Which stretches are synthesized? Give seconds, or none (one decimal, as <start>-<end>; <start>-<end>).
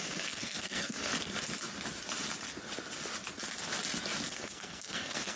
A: 0.0-1.1; 4.3-5.4